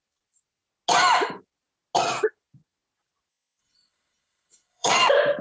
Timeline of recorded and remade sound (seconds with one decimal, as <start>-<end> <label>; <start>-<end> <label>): 0.0-3.6 recorded; 3.6-4.9 remade; 4.9-5.4 recorded